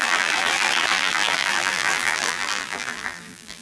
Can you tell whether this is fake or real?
fake